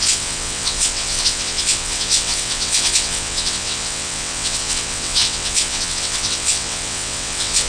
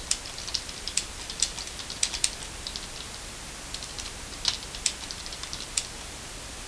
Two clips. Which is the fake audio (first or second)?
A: first